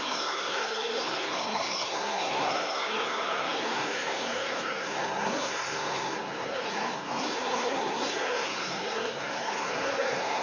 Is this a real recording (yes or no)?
no